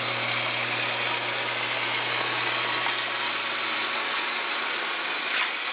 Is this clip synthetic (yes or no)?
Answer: no